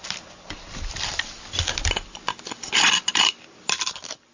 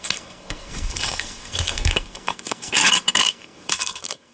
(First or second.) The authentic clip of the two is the first